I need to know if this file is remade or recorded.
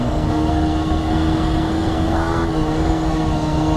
remade